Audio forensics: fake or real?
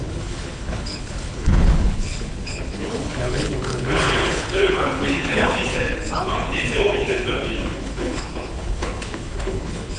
fake